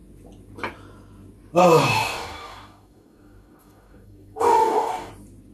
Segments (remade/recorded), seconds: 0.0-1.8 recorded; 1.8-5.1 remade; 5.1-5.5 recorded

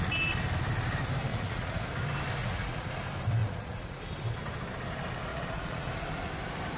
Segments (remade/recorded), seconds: 0.0-1.3 recorded; 1.3-1.8 remade; 1.8-2.4 recorded; 2.4-2.9 remade; 2.9-3.4 recorded; 3.4-4.0 remade; 4.0-5.3 recorded; 5.3-5.9 remade; 5.9-6.8 recorded

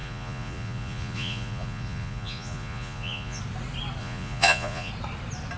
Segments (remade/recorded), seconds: 0.0-3.4 remade; 3.4-4.0 recorded; 4.0-4.9 remade; 4.9-5.6 recorded

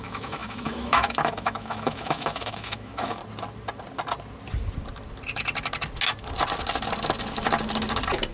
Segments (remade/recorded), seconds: 0.0-3.2 remade; 3.2-8.3 recorded